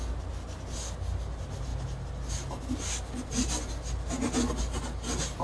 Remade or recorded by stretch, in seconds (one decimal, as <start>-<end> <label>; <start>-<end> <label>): 0.0-5.4 recorded